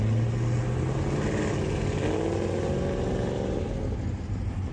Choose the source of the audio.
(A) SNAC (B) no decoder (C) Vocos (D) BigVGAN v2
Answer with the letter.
B